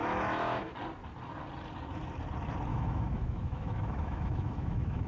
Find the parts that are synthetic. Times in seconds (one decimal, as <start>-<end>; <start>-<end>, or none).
0.0-0.7; 2.7-5.1